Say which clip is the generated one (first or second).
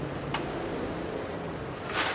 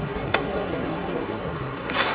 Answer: second